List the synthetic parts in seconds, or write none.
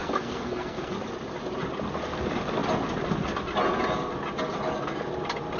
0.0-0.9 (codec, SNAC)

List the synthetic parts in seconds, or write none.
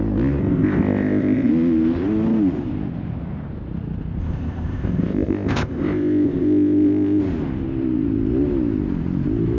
0.4-1.5 (codec, ZipCodec); 4.2-7.2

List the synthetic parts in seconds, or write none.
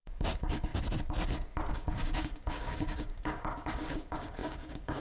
0.0-0.7 (codec, DAC); 1.7-5.0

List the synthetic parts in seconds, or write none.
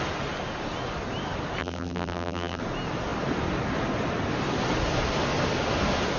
1.6-2.6 (vocoder, BigVGAN v2)